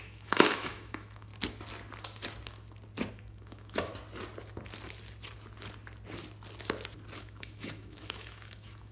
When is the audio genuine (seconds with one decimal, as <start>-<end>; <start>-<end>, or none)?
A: 1.3-3.1; 3.9-7.2